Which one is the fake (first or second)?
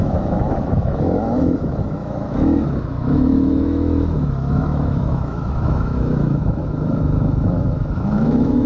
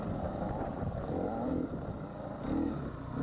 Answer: first